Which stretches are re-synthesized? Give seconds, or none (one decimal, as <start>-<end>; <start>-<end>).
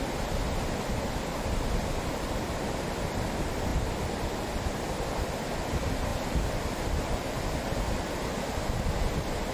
0.0-9.5